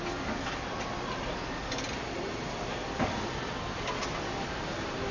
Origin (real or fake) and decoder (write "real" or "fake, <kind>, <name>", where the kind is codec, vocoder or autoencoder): real